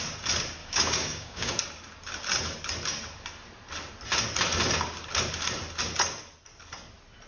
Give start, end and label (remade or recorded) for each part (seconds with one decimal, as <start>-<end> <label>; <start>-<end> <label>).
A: 0.0-0.6 recorded; 0.6-1.6 remade; 1.6-7.3 recorded